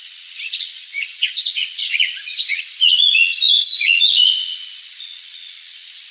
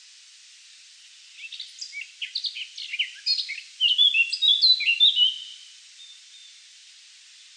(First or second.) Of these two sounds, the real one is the second